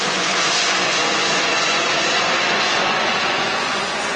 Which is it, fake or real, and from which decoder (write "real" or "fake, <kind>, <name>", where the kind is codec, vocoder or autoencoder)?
fake, vocoder, Vocos